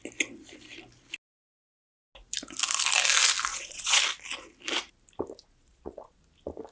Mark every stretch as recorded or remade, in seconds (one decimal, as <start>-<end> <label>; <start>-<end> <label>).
0.0-3.5 recorded; 3.5-4.0 remade; 4.0-5.4 recorded; 5.4-6.2 remade; 6.2-6.7 recorded